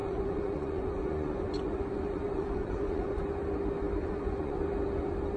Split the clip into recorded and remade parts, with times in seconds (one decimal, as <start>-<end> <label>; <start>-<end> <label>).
0.0-3.2 remade; 3.2-4.0 recorded; 4.0-4.6 remade; 4.6-5.4 recorded